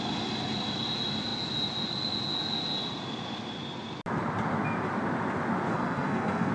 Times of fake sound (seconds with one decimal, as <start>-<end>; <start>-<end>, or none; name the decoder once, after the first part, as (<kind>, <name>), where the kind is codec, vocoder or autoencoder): 5.7-6.5 (codec, SNAC)